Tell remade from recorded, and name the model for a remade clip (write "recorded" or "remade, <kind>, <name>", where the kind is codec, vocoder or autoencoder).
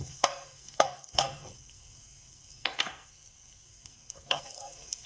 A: remade, codec, SNAC